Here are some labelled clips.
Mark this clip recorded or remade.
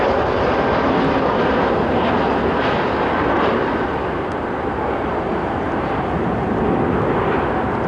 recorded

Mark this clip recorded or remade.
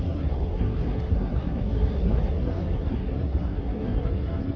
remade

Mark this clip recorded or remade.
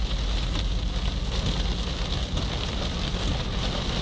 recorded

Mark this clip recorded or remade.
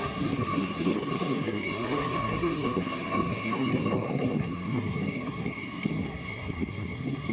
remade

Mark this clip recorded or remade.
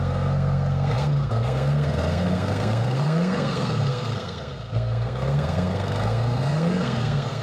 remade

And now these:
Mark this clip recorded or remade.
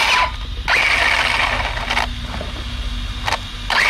recorded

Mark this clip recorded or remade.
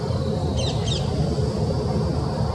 recorded